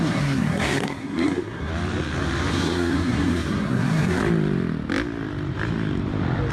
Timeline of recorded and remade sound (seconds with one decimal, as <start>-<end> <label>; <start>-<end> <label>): 0.0-1.7 remade; 1.7-2.5 recorded; 2.5-4.2 remade; 4.2-6.5 recorded